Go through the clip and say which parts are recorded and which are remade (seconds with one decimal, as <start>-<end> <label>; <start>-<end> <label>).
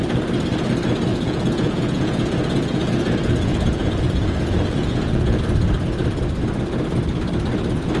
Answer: 0.0-1.1 recorded; 1.1-5.4 remade; 5.4-8.0 recorded